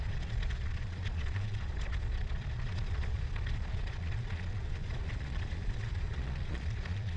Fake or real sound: fake